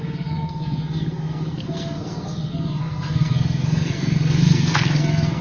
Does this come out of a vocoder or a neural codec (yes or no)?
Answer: yes